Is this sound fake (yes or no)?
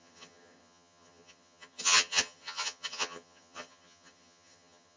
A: yes